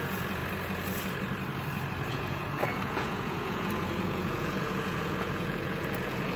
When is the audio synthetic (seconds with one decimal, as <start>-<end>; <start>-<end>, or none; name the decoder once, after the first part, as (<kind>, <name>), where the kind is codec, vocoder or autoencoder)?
0.0-0.4 (vocoder, Vocos); 2.1-6.4